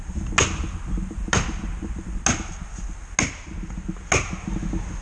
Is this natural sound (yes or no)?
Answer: yes